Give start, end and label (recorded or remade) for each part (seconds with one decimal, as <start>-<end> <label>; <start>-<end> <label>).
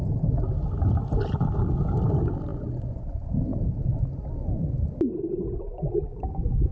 0.0-2.5 recorded; 2.5-3.0 remade; 3.0-6.7 recorded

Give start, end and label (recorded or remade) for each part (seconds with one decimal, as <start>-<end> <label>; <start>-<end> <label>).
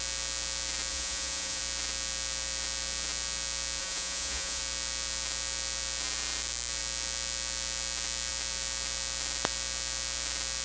0.0-0.9 recorded; 0.9-1.6 remade; 1.6-3.8 recorded; 3.8-4.6 remade; 4.6-10.6 recorded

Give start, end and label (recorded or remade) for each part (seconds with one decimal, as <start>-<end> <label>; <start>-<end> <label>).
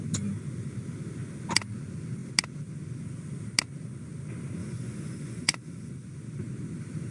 0.0-4.6 recorded; 4.6-5.9 remade; 5.9-7.1 recorded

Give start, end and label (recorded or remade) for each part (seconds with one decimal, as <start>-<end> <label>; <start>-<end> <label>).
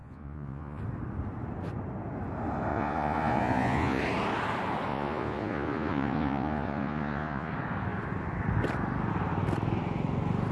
0.0-0.8 remade; 0.8-2.7 recorded; 2.7-4.0 remade; 4.0-4.9 recorded; 4.9-7.5 remade; 7.5-10.5 recorded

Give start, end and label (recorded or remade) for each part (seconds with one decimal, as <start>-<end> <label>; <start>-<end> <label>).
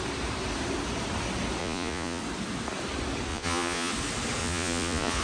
0.0-1.6 recorded; 1.6-2.2 remade; 2.2-3.3 recorded; 3.3-3.9 remade; 3.9-4.4 recorded; 4.4-5.2 remade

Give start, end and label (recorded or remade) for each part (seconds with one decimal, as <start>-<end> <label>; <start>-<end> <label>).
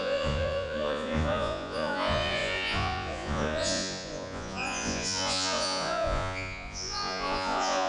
0.0-7.9 remade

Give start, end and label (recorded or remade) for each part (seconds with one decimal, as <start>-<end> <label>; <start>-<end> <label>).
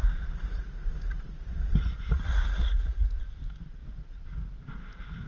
0.0-3.2 remade; 3.2-5.3 recorded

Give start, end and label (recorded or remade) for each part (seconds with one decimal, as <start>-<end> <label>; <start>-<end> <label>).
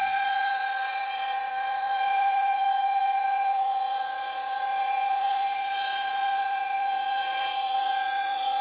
0.0-8.6 remade